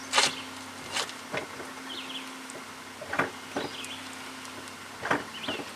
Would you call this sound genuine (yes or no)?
yes